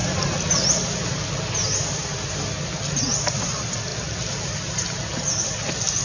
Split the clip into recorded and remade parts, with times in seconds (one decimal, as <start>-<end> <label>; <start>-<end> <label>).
0.0-6.0 recorded